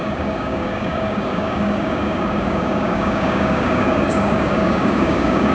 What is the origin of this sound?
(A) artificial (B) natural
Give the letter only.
A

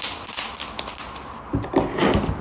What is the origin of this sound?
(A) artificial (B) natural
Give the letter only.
B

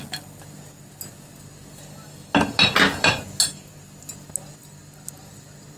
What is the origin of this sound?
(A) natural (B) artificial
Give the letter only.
A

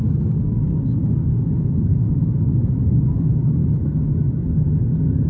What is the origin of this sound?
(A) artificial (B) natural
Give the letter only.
A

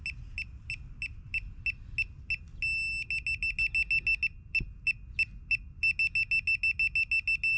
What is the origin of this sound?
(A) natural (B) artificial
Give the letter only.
A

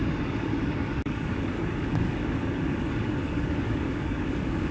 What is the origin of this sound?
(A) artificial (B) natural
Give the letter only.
A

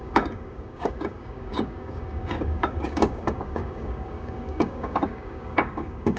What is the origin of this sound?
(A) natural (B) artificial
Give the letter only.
B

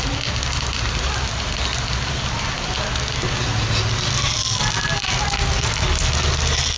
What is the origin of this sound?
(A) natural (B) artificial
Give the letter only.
A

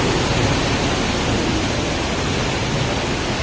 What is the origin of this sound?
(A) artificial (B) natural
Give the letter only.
B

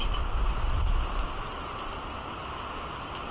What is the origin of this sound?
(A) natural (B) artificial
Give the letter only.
A